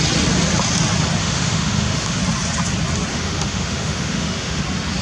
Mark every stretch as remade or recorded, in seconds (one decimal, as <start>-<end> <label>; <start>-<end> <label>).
0.0-1.2 recorded; 1.2-2.2 remade; 2.2-3.1 recorded; 3.1-4.6 remade; 4.6-5.0 recorded